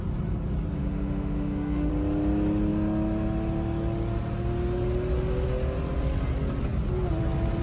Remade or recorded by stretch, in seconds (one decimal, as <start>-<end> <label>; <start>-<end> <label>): 0.0-0.8 recorded; 0.8-1.9 remade; 1.9-7.6 recorded